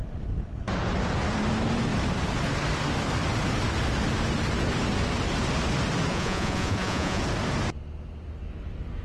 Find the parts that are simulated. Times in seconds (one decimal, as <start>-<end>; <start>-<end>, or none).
6.1-7.2

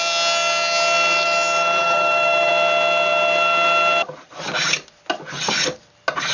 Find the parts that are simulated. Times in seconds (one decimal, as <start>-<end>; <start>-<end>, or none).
1.8-2.5

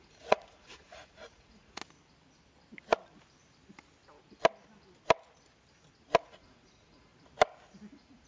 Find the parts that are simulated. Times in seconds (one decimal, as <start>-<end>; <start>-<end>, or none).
0.0-1.8; 6.2-7.1; 7.9-8.3

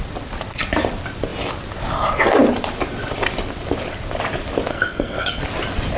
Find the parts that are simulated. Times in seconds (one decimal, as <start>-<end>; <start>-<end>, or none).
4.7-5.4

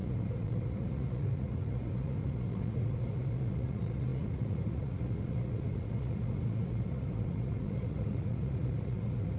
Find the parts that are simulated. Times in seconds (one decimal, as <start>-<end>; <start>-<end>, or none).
0.0-9.4